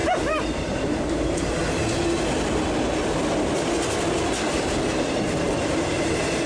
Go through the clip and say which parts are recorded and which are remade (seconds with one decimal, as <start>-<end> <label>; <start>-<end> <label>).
0.0-1.6 remade; 1.6-4.3 recorded; 4.3-6.5 remade